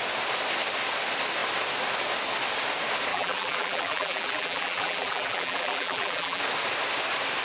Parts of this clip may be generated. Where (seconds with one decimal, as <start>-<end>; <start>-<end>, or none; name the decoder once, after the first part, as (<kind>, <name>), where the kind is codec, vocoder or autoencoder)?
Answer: 3.1-6.4 (vocoder, BigVGAN v2)